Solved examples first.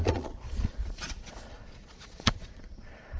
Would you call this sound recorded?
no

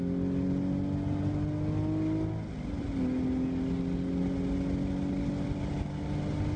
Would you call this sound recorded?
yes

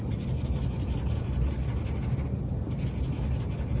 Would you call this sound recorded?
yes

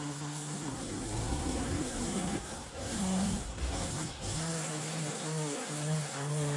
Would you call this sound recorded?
no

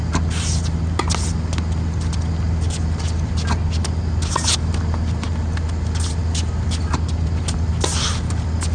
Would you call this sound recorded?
yes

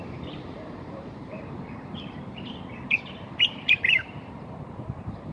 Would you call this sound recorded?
no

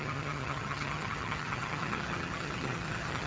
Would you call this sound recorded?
no